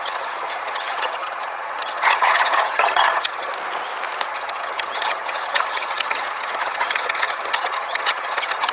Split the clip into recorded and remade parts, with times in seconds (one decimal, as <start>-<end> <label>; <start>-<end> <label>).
0.0-3.5 remade; 3.5-4.3 recorded; 4.3-8.7 remade